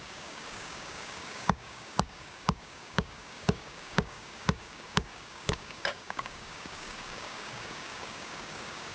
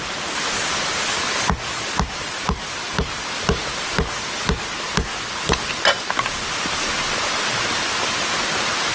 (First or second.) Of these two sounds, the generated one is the first